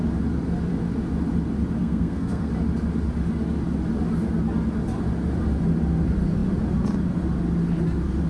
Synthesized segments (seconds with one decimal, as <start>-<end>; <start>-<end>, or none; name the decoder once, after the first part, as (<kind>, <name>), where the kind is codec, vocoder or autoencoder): 1.8-2.5 (codec, SNAC)